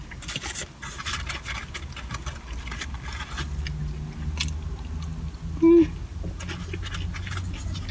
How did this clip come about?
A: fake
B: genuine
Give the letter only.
B